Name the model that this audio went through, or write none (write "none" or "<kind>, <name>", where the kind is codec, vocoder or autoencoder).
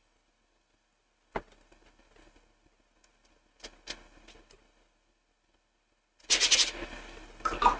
none